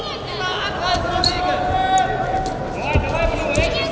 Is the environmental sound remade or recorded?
recorded